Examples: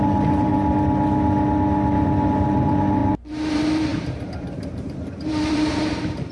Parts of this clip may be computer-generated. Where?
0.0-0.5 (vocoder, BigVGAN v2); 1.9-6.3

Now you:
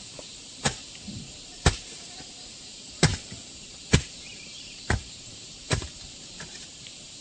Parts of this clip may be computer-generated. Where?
0.0-7.2 (vocoder, BigVGAN v2)

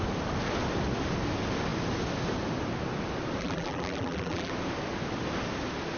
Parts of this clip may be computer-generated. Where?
3.4-4.5 (vocoder, BigVGAN v2)

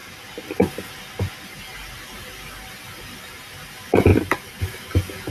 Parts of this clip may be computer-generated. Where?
0.0-0.9 (vocoder, BigVGAN v2); 4.1-4.6

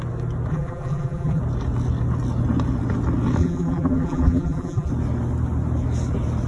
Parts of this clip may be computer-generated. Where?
0.5-1.4 (vocoder, BigVGAN v2); 3.4-4.9

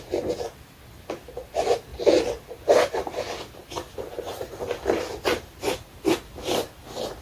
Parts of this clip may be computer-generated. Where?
1.9-5.6 (vocoder, BigVGAN v2)

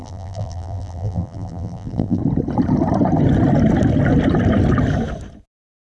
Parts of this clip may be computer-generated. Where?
0.0-2.2 (vocoder, BigVGAN v2)